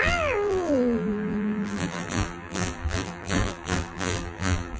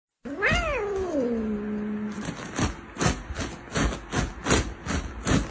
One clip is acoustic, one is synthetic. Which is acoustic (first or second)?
second